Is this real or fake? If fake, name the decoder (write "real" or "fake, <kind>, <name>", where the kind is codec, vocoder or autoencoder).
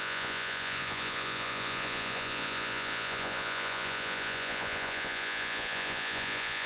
fake, vocoder, Vocos